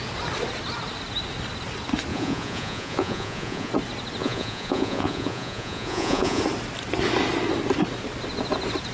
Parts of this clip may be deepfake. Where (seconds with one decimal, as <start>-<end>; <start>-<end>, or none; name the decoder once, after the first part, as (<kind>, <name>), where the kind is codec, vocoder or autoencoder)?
2.1-3.7 (vocoder, Vocos); 4.2-6.4